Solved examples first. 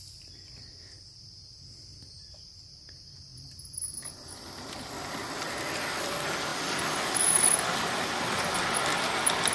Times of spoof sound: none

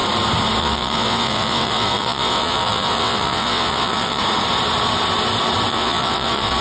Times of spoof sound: 0.6-4.2; 5.7-6.6

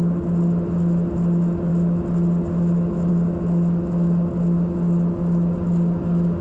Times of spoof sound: none

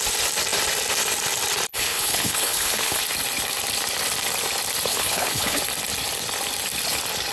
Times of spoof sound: 1.7-3.0; 4.9-5.6